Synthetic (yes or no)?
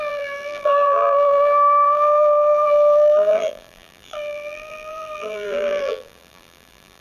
yes